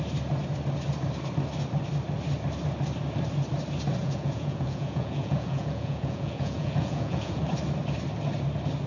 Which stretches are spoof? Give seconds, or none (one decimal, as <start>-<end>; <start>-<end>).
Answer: 4.0-7.4